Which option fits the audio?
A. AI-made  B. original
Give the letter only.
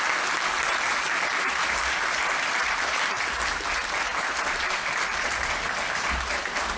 B